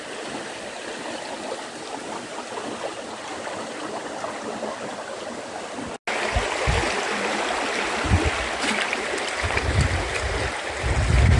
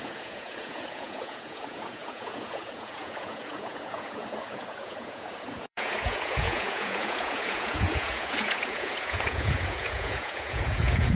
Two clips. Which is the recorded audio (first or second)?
first